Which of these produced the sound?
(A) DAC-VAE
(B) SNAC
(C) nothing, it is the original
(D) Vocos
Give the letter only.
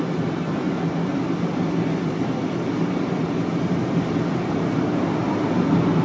C